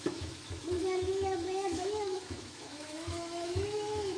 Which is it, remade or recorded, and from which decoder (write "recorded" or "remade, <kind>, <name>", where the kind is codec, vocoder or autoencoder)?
remade, autoencoder, DAC-VAE